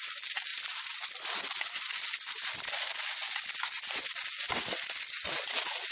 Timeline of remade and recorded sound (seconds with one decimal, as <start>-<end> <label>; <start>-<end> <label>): 0.0-5.9 recorded